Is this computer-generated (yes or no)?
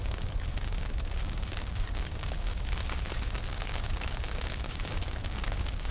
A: yes